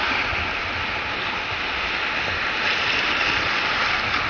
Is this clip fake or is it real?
real